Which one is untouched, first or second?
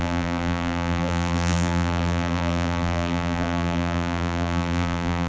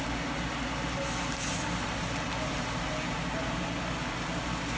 second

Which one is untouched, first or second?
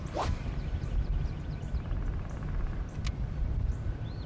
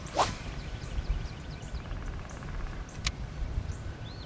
first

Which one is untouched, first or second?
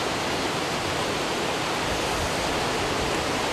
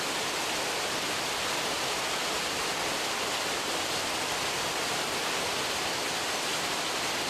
second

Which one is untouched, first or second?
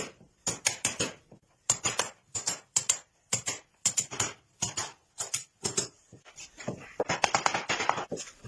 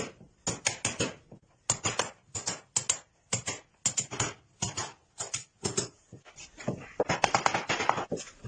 second